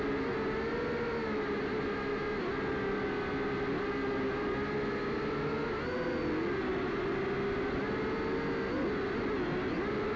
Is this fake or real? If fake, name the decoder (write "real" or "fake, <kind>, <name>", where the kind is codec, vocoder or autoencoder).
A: real